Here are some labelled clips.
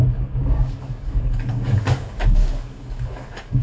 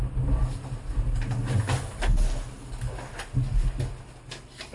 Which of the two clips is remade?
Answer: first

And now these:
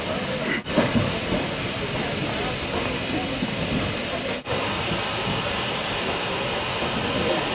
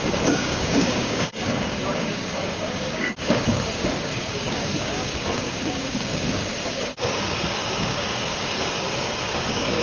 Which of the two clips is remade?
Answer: second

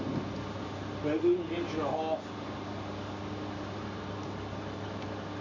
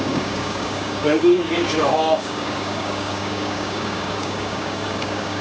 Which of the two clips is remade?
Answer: second